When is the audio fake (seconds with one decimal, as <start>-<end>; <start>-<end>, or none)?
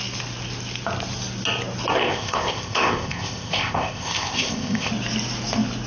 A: 2.0-4.9